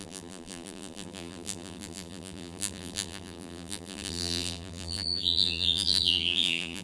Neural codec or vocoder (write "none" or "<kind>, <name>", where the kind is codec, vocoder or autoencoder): vocoder, BigVGAN v2